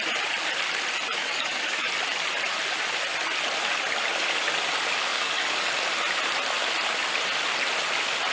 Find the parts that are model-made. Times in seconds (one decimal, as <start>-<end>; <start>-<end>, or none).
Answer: 1.2-1.9; 5.1-5.7